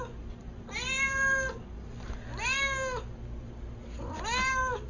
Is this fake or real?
real